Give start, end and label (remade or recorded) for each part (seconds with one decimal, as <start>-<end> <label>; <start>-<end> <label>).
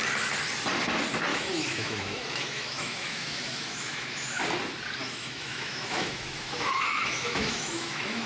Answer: 0.0-1.3 recorded; 1.3-4.4 remade; 4.4-5.0 recorded; 5.0-8.3 remade